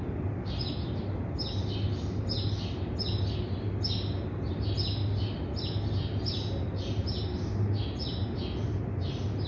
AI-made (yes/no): no